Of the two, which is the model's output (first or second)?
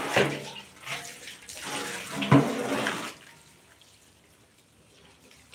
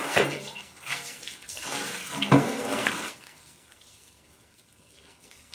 second